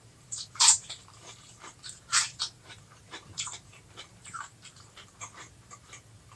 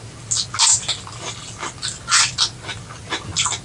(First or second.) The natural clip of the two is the second